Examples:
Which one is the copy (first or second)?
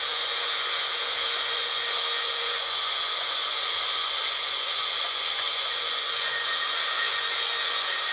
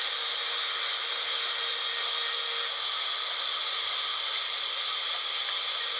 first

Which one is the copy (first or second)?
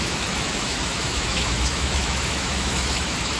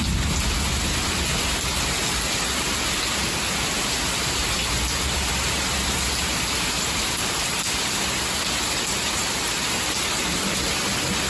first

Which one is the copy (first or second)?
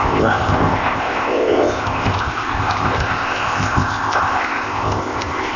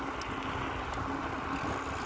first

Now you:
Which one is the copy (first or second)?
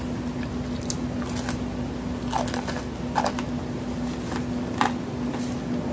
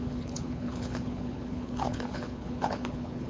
second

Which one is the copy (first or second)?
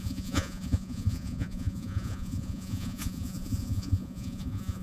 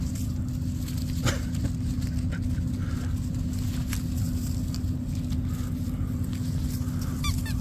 first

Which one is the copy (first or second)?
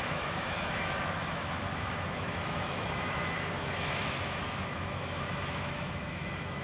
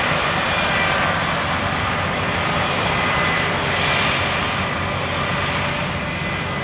first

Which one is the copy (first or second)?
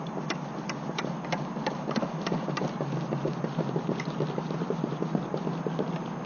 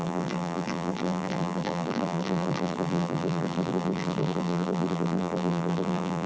second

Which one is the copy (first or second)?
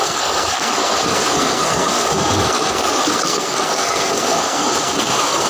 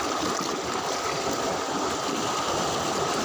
first